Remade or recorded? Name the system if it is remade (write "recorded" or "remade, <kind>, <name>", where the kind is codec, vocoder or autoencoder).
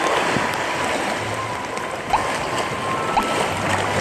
recorded